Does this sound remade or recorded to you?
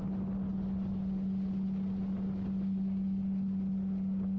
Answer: recorded